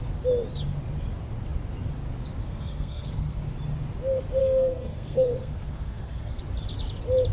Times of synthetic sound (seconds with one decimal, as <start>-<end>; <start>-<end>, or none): 2.4-3.4; 4.4-6.4